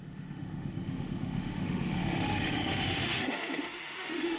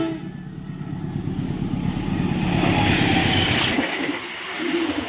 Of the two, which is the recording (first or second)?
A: second